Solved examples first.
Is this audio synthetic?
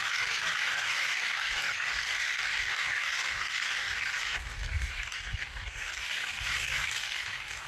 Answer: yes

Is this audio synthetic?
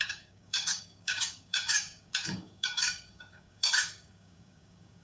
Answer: yes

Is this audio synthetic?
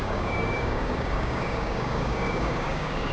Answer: yes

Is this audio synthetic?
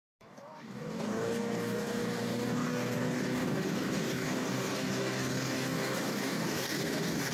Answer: yes